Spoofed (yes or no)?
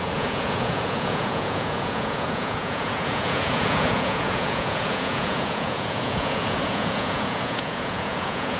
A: yes